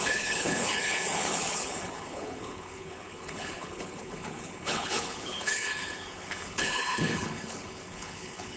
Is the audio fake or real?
fake